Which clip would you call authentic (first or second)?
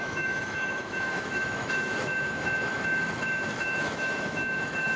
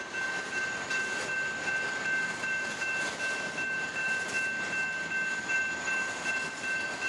second